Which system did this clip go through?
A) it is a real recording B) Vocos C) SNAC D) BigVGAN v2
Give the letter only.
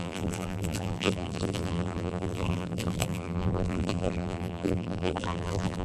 D